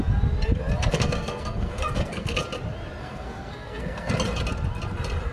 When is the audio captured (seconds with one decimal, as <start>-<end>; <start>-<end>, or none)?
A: 0.0-0.9; 2.4-3.0; 4.1-5.3